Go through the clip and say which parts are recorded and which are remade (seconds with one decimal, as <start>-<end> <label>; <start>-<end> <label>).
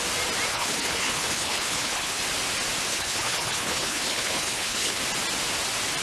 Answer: 0.0-0.5 recorded; 0.5-2.2 remade; 2.2-2.9 recorded; 2.9-5.0 remade; 5.0-6.0 recorded